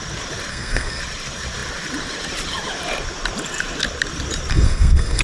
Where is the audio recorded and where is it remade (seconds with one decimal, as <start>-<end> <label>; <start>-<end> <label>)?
0.0-0.5 recorded; 0.5-1.0 remade; 1.0-4.5 recorded; 4.5-5.2 remade